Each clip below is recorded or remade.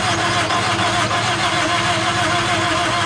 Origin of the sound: recorded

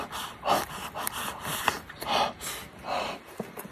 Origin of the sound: recorded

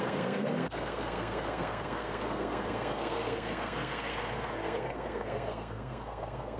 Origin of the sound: remade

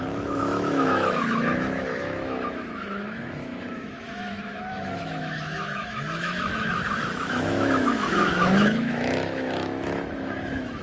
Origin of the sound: remade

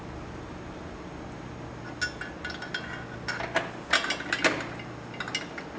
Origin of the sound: recorded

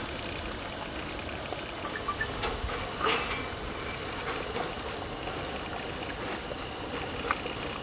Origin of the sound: recorded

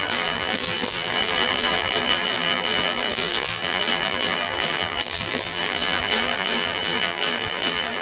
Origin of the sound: remade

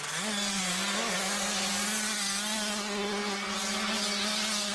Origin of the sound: recorded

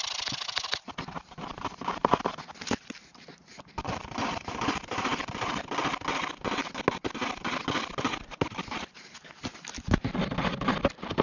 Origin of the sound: recorded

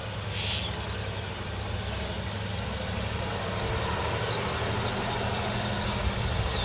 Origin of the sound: recorded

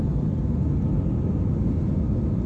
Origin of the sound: recorded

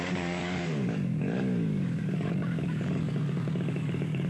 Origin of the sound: remade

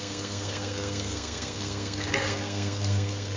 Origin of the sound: remade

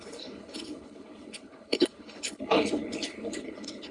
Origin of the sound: remade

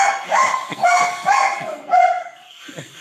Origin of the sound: remade